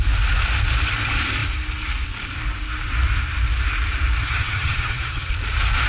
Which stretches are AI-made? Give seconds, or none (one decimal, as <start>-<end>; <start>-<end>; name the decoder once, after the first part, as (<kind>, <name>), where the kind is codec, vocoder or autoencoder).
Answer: 4.2-5.3 (vocoder, HiFi-GAN)